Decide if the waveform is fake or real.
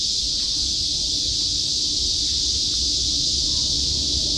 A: real